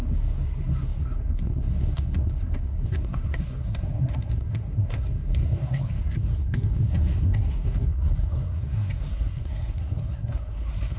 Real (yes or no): no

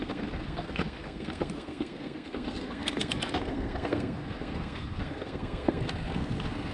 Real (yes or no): no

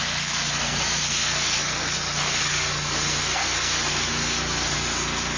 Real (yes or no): no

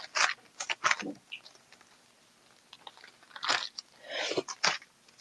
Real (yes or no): yes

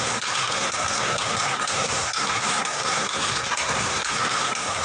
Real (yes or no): no